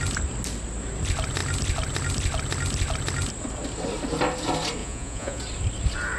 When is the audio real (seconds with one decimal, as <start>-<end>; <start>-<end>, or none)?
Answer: 0.0-4.8; 5.4-6.2